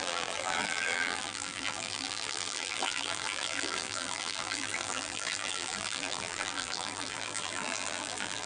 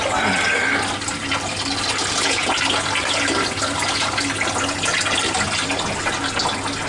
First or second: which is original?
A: second